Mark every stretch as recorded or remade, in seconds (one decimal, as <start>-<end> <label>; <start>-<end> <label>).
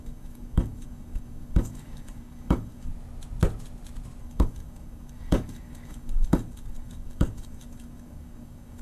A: 0.0-2.9 remade; 2.9-4.2 recorded; 4.2-8.8 remade